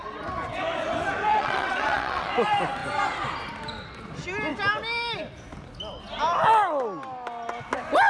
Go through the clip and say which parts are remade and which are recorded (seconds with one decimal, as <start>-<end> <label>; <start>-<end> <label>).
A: 0.0-1.3 recorded; 1.3-2.3 remade; 2.3-8.1 recorded

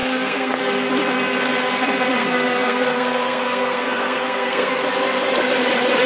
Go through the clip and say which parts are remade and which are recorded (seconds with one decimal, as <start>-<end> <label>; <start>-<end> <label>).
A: 0.0-0.6 remade; 0.6-2.2 recorded; 2.2-4.7 remade; 4.7-6.1 recorded

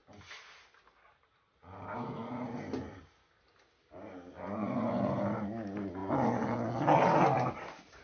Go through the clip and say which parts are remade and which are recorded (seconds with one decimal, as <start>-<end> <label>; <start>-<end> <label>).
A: 0.0-4.6 recorded; 4.6-5.1 remade; 5.1-8.0 recorded

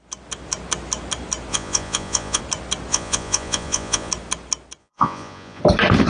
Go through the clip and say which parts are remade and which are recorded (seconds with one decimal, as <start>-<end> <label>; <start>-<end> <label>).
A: 0.0-1.5 recorded; 1.5-2.4 remade; 2.4-2.9 recorded; 2.9-4.1 remade; 4.1-4.8 recorded; 4.8-5.6 remade; 5.6-6.1 recorded